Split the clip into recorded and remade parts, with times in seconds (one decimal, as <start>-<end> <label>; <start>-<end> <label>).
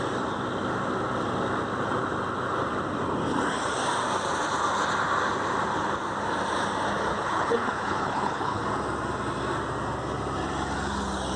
0.0-7.1 recorded; 7.1-8.6 remade; 8.6-11.4 recorded